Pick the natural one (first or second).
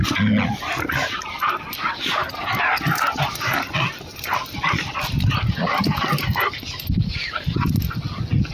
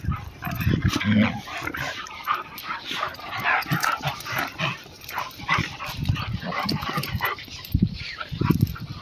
first